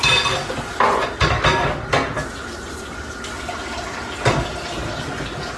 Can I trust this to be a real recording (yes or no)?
yes